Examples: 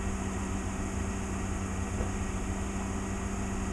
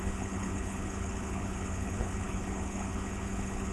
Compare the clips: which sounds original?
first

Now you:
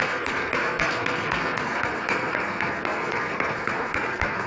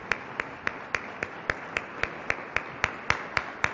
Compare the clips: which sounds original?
second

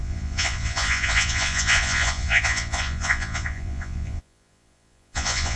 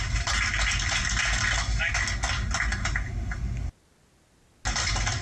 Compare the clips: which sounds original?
second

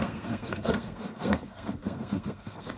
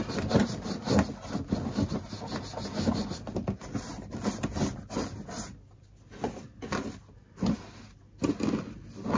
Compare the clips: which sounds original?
second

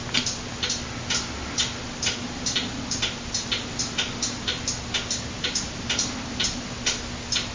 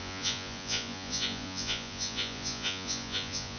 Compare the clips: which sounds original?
first